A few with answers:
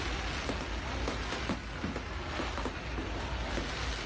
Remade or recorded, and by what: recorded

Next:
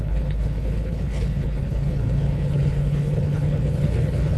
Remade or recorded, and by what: remade, codec, HILCodec